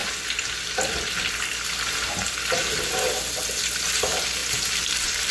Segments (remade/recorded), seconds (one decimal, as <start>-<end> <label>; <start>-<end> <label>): 0.0-4.4 recorded; 4.4-5.3 remade